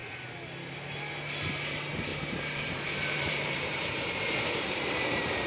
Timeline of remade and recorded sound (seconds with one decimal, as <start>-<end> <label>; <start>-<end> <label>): 0.0-2.1 recorded; 2.1-5.5 remade